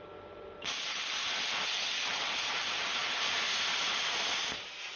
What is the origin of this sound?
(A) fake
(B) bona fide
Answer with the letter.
B